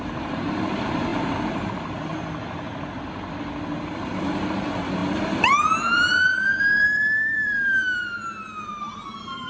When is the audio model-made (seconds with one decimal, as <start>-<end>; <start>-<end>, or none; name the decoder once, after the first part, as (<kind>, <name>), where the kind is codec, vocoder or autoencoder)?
0.0-2.1 (vocoder, BigVGAN v2); 3.9-9.5